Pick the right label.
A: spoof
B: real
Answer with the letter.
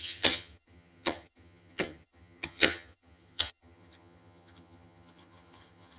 A